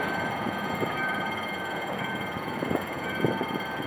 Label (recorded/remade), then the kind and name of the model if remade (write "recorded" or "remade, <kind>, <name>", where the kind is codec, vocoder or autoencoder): remade, vocoder, Vocos